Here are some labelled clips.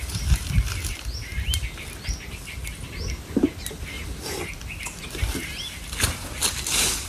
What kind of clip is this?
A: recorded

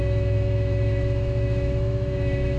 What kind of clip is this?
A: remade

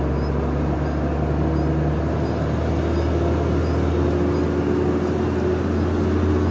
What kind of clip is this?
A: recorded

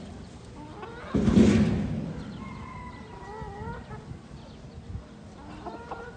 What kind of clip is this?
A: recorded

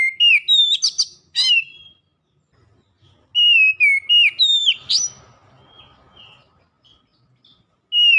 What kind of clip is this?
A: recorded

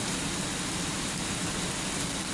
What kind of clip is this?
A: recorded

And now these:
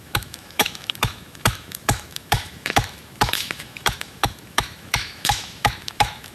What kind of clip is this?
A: remade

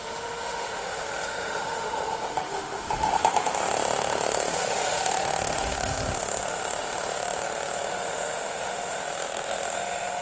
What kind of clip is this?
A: remade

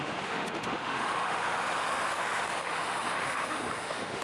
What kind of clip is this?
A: remade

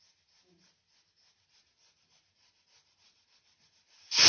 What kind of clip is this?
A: recorded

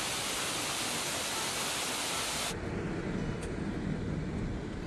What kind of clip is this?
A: recorded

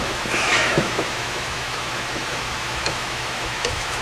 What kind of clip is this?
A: remade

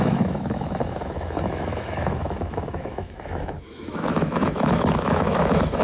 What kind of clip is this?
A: remade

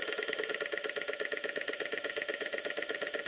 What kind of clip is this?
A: remade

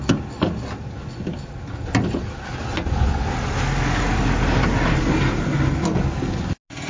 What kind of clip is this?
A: recorded